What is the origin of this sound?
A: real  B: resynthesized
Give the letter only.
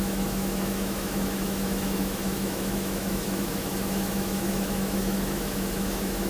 B